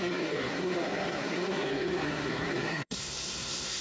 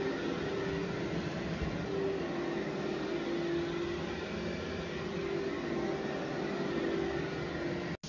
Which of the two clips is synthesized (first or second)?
first